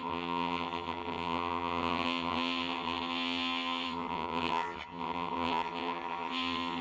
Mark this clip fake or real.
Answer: fake